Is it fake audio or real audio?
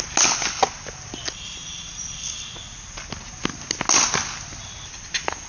real